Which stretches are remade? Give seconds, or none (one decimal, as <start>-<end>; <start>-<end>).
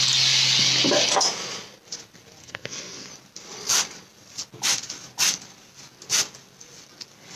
2.4-3.1